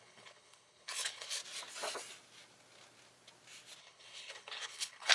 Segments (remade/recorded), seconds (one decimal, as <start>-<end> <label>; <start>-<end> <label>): 0.0-1.4 remade; 1.4-3.8 recorded; 3.8-5.1 remade